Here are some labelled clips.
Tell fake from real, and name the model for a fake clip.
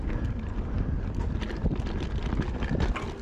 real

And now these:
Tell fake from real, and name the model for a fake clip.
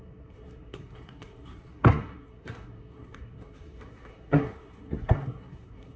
fake, codec, SNAC